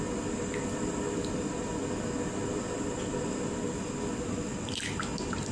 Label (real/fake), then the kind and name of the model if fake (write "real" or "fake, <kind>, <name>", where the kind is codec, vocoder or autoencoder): real